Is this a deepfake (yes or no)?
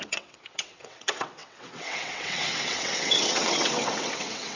yes